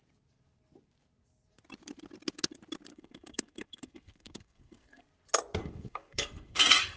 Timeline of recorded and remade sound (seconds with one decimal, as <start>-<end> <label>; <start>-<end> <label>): 0.0-2.9 recorded; 2.9-5.0 remade; 5.0-5.6 recorded; 5.6-7.0 remade